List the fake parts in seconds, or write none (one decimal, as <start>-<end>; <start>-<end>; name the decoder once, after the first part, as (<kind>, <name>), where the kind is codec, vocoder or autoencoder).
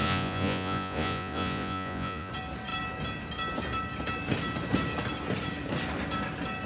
0.0-2.3 (vocoder, Vocos)